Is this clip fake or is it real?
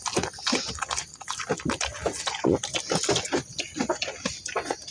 real